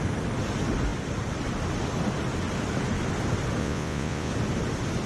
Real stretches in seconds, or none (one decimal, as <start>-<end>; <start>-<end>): 0.0-3.6; 4.3-5.1